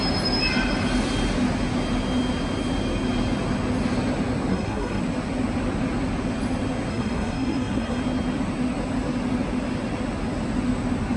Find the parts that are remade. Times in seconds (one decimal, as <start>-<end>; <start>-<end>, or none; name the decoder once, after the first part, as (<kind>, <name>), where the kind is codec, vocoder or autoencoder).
4.5-5.0 (codec, SNAC); 6.9-8.0